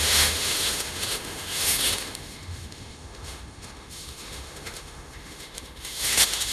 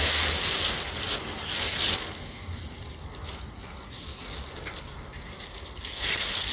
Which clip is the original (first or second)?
second